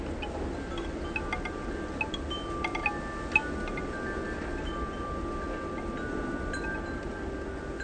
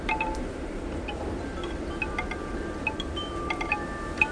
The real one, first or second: first